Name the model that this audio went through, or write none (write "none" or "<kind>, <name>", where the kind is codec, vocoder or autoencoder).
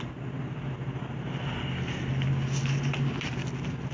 vocoder, BigVGAN v2